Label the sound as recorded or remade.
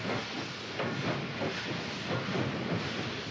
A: recorded